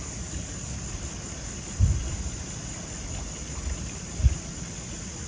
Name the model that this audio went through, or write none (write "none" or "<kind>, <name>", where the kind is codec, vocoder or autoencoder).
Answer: none